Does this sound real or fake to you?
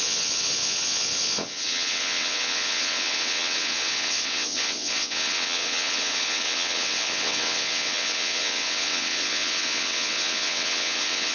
fake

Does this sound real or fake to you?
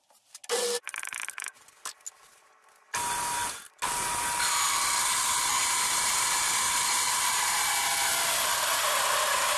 real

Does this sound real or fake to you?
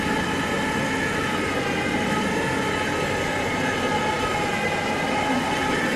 real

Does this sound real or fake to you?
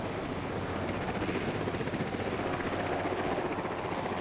real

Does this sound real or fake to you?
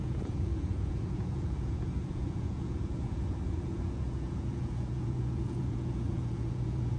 fake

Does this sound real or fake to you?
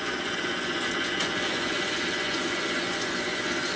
fake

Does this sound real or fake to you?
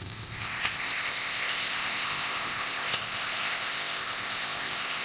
fake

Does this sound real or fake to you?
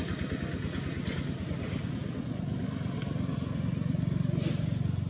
real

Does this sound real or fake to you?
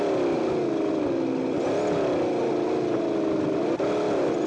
real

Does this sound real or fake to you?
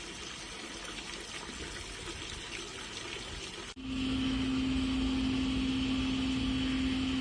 real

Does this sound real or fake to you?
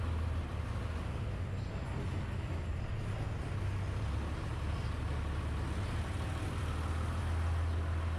real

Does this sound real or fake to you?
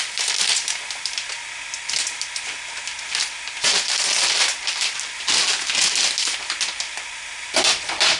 real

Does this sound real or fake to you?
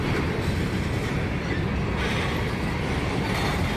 real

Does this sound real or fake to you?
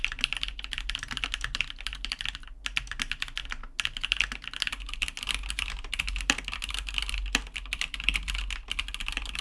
real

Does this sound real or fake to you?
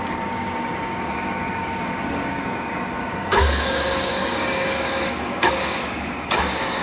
fake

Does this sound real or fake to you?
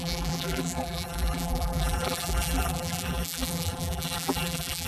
fake